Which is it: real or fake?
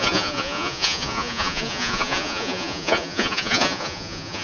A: fake